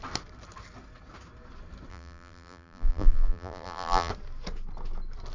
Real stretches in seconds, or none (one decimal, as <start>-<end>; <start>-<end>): 0.0-1.9; 4.1-5.3